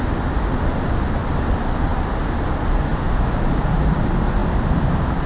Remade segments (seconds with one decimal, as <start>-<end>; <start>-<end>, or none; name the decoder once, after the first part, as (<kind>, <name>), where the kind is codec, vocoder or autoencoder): none